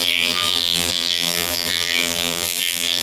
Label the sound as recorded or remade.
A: remade